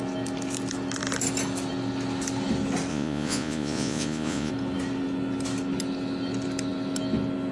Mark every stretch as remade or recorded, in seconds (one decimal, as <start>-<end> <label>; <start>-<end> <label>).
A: 0.0-2.9 recorded; 2.9-4.5 remade; 4.5-7.5 recorded